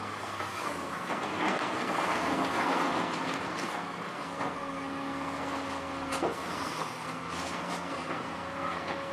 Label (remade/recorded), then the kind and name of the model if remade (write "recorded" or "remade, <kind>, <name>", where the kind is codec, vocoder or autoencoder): remade, codec, SNAC